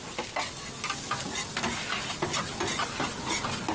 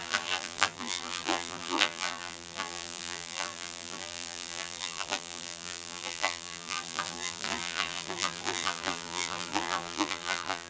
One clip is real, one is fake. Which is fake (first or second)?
second